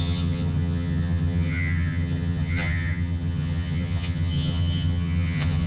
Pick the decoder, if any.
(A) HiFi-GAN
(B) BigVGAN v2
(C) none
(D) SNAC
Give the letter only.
A